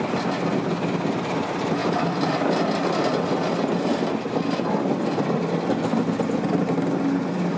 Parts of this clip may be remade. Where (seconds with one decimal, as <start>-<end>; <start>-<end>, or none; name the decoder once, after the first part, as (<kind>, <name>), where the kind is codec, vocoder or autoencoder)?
none